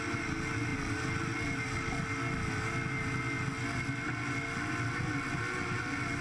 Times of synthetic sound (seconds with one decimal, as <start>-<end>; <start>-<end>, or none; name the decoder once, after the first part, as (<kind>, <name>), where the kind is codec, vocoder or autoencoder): none